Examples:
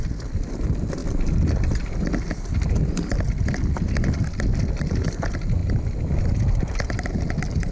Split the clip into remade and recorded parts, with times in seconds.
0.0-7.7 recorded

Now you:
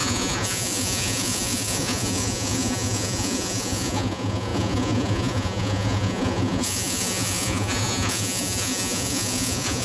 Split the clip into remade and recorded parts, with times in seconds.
0.0-9.8 remade

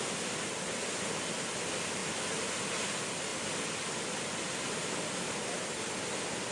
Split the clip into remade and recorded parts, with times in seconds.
0.0-6.5 recorded

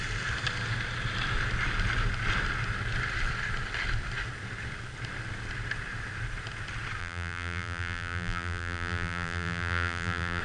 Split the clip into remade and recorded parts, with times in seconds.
0.0-7.0 recorded; 7.0-10.4 remade